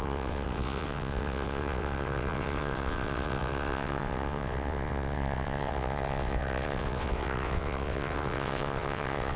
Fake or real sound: fake